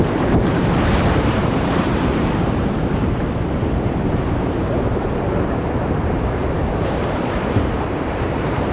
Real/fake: fake